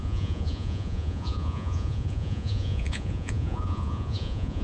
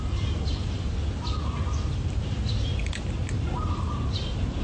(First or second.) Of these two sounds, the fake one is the first